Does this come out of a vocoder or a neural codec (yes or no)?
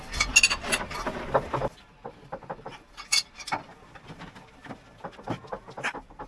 no